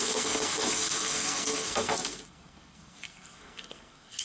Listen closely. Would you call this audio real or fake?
fake